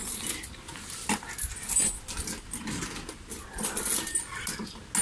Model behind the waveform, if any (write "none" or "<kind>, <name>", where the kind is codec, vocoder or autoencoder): none